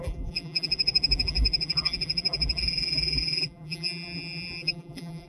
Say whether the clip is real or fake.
fake